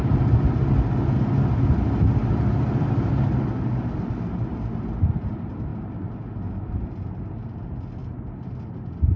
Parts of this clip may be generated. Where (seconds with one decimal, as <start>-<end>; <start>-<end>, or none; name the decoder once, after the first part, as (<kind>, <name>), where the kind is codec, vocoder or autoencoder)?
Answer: 2.2-3.1 (vocoder, BigVGAN v2)